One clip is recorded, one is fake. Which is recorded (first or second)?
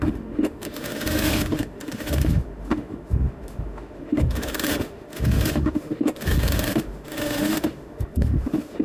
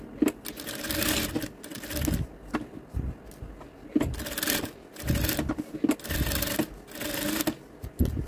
second